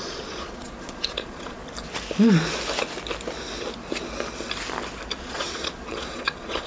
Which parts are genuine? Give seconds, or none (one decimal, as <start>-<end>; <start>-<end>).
1.6-5.2